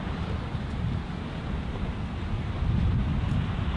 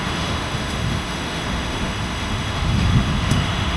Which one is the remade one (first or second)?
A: second